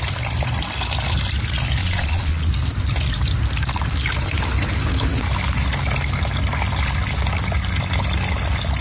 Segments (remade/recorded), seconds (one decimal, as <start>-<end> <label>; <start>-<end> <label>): 0.0-1.8 recorded; 1.8-2.5 remade; 2.5-8.8 recorded